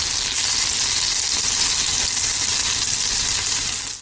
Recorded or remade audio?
recorded